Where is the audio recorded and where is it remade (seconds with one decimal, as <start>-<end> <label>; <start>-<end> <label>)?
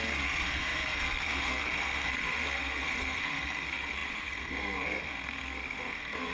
0.0-6.3 remade